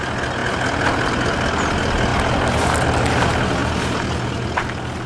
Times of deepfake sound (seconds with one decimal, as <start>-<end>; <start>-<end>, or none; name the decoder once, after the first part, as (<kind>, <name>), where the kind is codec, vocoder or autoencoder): none